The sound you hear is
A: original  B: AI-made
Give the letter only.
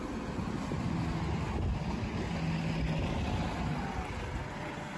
A